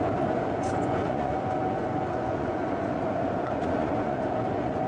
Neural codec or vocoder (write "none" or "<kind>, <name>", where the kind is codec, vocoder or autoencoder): vocoder, Vocos